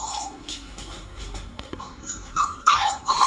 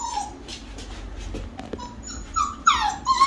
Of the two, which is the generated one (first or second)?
first